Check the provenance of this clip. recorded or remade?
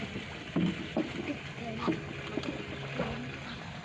recorded